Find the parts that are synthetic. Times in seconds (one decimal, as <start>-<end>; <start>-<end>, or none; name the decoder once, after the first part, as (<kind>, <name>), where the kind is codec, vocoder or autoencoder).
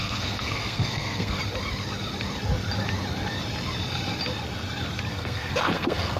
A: 0.0-1.4 (codec, SNAC); 5.1-6.2